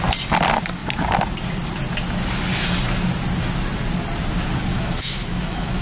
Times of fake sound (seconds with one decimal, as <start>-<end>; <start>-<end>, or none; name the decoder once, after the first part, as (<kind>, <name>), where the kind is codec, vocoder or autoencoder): 4.7-5.8 (autoencoder, DAC-VAE)